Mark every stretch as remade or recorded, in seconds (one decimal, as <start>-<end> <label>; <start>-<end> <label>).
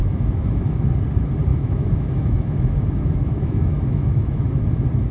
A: 0.0-0.9 remade; 0.9-1.5 recorded; 1.5-4.6 remade; 4.6-5.1 recorded